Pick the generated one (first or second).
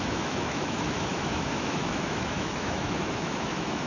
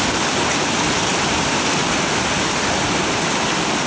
first